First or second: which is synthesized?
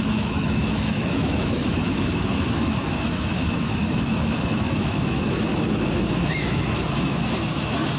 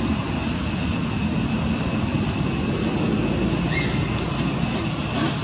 first